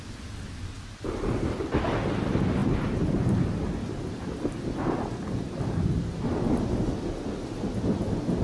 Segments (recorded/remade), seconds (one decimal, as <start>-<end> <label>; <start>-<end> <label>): 0.0-8.4 recorded